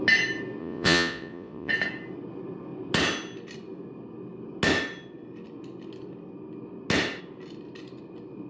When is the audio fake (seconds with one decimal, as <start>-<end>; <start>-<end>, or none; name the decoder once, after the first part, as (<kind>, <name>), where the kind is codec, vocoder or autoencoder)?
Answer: 0.6-1.7 (vocoder, Vocos)